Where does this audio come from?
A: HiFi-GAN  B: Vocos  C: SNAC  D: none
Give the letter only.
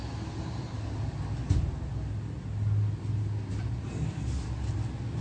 D